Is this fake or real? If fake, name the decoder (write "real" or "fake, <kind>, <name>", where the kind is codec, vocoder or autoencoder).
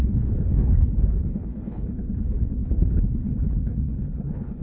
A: fake, codec, HILCodec